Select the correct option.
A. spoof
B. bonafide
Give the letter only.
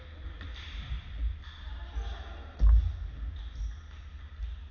B